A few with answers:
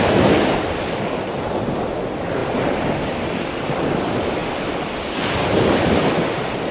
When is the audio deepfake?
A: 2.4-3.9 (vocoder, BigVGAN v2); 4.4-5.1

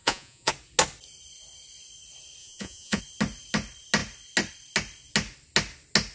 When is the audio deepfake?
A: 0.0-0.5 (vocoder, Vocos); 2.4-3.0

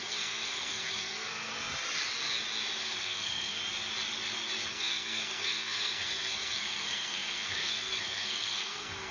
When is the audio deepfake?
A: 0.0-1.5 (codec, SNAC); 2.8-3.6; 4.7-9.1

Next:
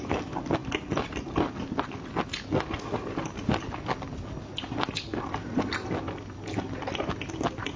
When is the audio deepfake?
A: none

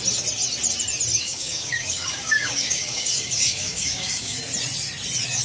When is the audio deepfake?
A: 1.2-4.4 (codec, DAC)

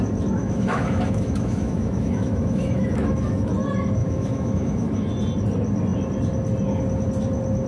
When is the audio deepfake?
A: 0.4-3.5 (autoencoder, DAC-VAE); 4.0-5.1